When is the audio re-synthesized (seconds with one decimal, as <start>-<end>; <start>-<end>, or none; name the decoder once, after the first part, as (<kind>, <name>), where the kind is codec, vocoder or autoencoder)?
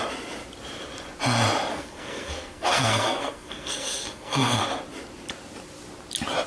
1.7-4.6 (codec, SNAC)